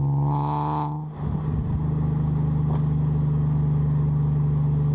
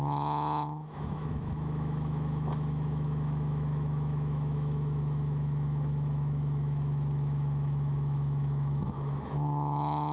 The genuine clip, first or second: first